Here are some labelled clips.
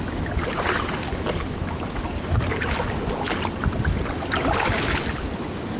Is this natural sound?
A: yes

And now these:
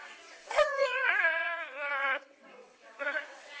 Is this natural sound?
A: no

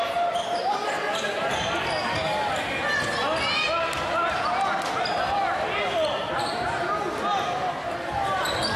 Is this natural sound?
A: yes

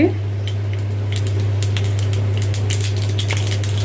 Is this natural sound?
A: yes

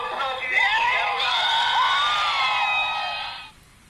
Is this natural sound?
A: no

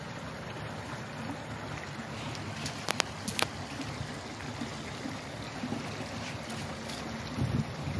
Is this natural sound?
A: yes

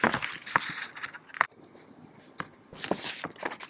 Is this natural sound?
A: yes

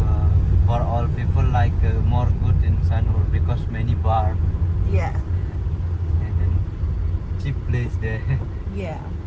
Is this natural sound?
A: yes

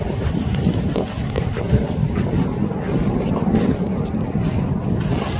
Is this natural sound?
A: yes